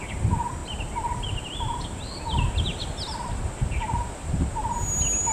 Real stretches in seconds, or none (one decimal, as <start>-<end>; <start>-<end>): 0.0-5.3